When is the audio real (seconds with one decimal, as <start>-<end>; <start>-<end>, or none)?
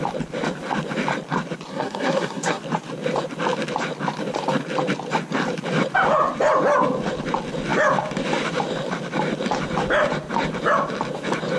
0.0-1.7; 2.6-11.6